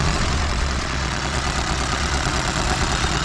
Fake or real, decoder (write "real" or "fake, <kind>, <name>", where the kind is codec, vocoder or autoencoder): fake, vocoder, Vocos